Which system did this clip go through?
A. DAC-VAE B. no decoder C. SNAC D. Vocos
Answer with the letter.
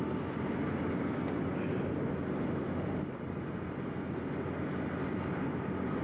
B